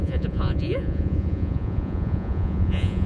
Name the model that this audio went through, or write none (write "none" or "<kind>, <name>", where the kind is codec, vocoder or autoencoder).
vocoder, Vocos